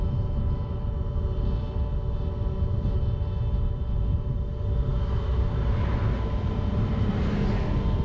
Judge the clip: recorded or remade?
recorded